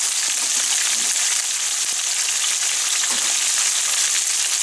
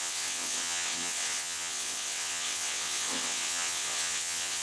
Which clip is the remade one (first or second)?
second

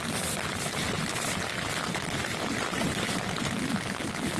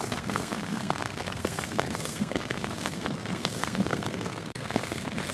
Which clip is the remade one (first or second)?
second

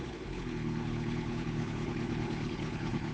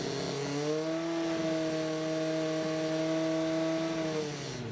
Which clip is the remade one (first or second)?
first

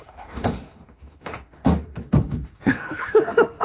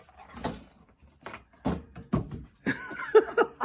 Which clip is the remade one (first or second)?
first